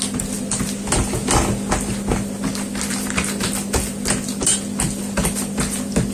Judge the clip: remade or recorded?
recorded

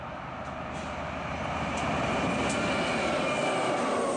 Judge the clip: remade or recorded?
recorded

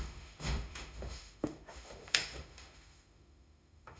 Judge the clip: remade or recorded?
remade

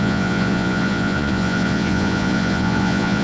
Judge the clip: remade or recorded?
remade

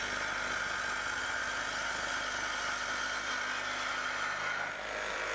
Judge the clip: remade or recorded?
recorded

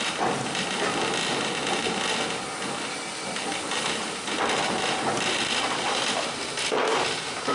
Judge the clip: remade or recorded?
recorded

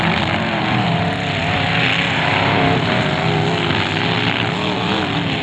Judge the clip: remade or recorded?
recorded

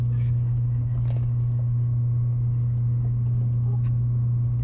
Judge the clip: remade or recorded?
recorded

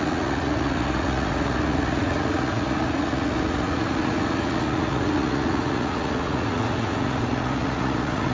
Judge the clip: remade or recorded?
remade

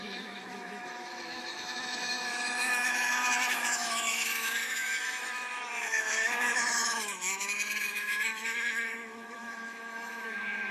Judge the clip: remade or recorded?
remade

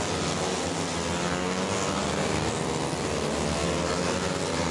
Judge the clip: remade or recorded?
recorded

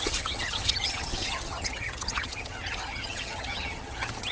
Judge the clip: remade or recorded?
remade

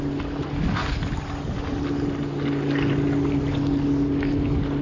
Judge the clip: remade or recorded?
recorded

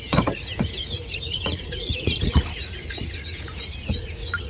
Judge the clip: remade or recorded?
remade